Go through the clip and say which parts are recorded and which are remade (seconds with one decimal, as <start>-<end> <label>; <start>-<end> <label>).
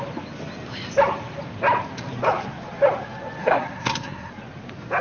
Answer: 0.0-3.4 recorded; 3.4-4.3 remade; 4.3-5.0 recorded